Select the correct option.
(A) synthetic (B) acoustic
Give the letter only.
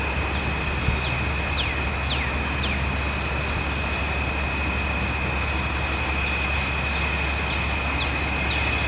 B